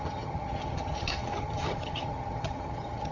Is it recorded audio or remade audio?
remade